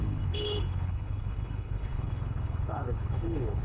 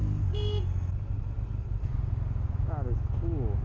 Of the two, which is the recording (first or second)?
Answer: second